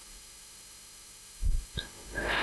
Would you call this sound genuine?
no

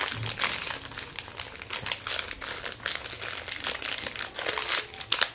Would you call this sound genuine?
yes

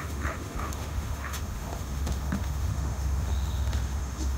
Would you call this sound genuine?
no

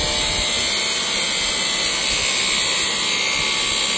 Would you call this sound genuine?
yes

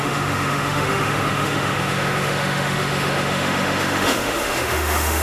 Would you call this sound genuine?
no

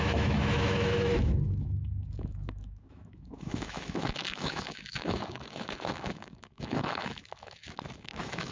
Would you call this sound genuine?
no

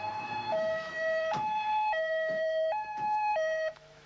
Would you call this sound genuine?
no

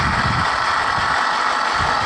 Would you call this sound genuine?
yes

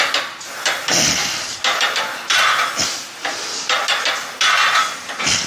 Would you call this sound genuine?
yes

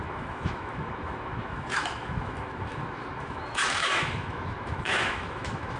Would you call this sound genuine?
no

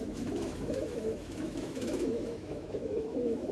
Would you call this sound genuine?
no